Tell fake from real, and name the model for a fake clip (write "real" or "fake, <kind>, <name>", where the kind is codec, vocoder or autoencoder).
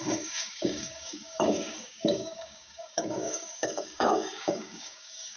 fake, codec, DAC